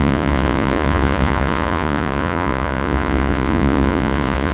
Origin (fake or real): fake